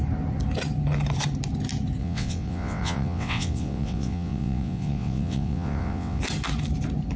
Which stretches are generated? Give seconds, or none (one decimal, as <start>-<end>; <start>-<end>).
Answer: 2.0-6.2